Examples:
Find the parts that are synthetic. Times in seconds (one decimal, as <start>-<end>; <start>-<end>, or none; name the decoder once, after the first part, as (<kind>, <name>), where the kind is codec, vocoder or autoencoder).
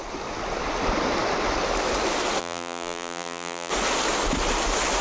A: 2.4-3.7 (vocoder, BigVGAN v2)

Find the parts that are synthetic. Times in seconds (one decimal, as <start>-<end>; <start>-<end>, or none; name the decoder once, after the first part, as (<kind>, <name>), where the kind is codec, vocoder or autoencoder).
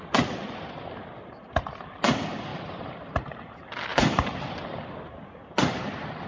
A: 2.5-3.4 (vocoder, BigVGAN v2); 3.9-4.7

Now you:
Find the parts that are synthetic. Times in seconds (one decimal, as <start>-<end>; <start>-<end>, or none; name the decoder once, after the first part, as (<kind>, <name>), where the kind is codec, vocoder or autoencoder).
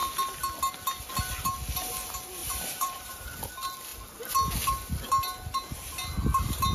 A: 2.4-3.5 (vocoder, BigVGAN v2)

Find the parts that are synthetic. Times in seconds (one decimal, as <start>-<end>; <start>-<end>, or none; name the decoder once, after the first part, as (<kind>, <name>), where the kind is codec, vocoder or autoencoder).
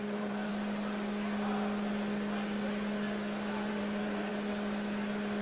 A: 0.0-0.5 (vocoder, BigVGAN v2); 3.7-4.3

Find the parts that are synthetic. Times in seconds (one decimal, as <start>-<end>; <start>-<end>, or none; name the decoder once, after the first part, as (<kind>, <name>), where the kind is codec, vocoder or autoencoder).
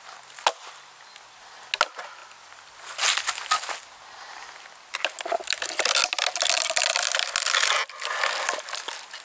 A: none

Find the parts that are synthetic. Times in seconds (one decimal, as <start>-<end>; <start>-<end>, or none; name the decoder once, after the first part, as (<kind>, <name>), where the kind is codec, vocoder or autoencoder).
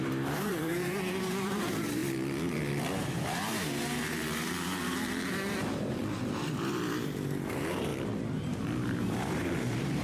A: 0.0-2.0 (vocoder, BigVGAN v2); 3.0-6.0; 7.5-7.9; 8.8-10.0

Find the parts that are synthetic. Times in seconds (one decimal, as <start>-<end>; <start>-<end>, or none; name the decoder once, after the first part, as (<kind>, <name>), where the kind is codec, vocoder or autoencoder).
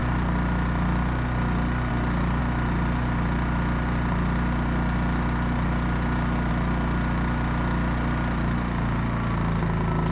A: none